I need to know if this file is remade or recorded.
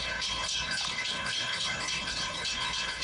remade